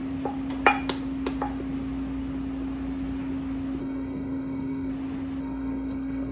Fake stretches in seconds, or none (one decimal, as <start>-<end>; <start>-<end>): 3.8-4.9; 5.4-6.3